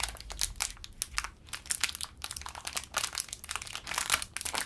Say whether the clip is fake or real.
real